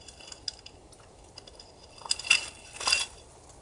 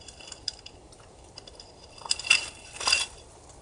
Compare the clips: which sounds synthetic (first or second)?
second